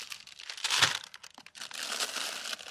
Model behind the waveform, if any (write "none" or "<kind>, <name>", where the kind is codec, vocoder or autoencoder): none